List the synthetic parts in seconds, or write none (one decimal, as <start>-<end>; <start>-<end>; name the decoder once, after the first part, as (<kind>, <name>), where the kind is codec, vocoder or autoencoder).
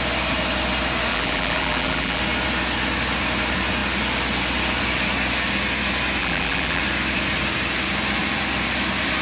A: 1.1-2.2 (vocoder, BigVGAN v2); 6.2-6.8